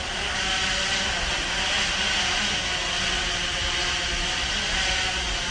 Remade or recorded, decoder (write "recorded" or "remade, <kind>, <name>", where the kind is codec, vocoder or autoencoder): recorded